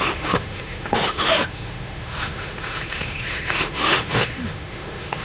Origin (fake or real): fake